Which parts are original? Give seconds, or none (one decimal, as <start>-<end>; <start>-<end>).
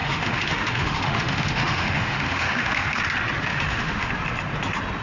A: 3.0-3.5; 4.1-5.0